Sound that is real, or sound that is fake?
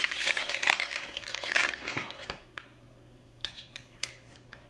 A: fake